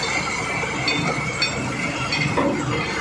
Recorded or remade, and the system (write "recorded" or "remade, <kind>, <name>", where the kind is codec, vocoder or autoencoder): recorded